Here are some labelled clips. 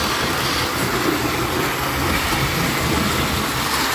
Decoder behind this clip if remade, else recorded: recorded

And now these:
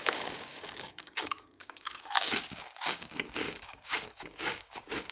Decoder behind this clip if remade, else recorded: remade, codec, DAC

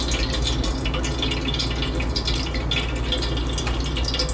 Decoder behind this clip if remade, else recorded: recorded